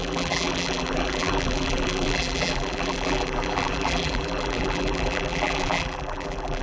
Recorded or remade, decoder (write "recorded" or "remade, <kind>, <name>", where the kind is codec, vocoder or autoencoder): remade, vocoder, BigVGAN v2